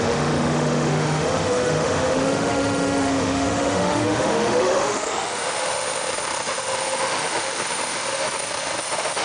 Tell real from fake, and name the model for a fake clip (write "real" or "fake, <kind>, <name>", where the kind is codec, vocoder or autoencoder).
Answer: fake, autoencoder, DAC-VAE